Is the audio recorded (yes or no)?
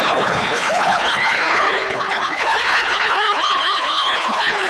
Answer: no